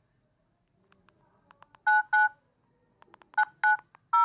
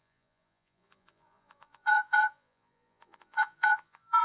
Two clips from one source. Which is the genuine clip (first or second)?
first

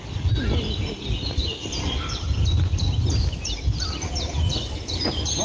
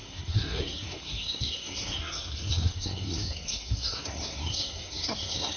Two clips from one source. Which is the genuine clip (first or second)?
first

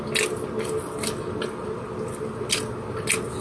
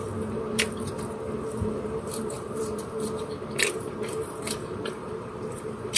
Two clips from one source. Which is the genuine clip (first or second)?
first